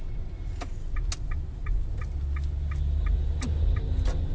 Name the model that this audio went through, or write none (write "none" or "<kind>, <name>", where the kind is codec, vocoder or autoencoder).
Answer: none